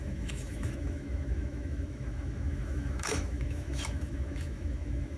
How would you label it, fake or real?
fake